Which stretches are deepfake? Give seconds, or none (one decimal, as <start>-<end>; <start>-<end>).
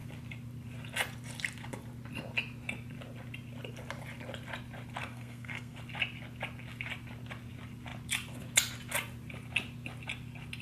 5.0-5.8